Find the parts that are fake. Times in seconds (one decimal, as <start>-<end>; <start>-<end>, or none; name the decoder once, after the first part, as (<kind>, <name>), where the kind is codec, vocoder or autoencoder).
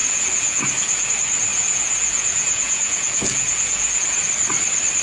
0.0-1.1 (vocoder, Vocos); 1.5-4.3